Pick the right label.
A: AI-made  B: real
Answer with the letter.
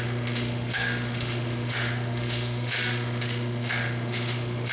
A